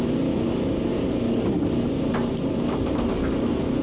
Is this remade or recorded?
recorded